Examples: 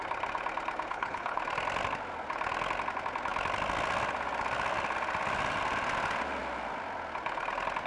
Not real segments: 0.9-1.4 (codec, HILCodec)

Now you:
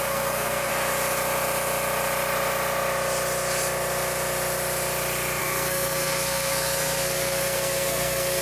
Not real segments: 0.0-0.7 (codec, SNAC); 5.4-8.4

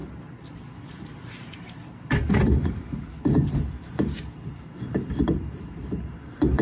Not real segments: 0.0-6.6 (vocoder, BigVGAN v2)

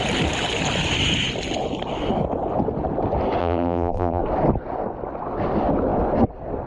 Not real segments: 3.4-4.2 (vocoder, BigVGAN v2)

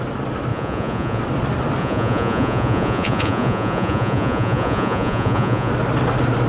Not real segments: 0.5-1.2 (vocoder, Vocos); 1.8-5.7

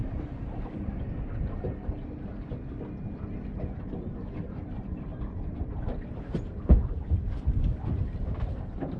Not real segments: 0.0-0.9 (vocoder, BigVGAN v2); 5.1-7.6